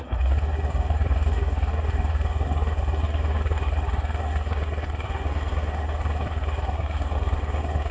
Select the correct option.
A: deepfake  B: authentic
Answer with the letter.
A